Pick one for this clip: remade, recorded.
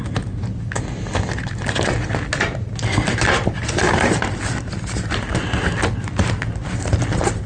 recorded